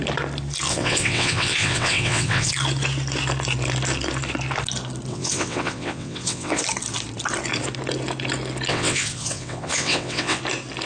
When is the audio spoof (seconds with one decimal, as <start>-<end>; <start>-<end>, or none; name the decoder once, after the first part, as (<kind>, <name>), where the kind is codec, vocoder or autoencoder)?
0.7-2.5 (vocoder, WaveNeXt); 5.1-6.6; 8.7-10.4